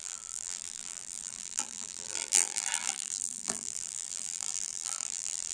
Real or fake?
fake